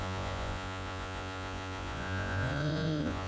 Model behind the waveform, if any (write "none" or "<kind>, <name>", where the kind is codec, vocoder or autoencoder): vocoder, Vocos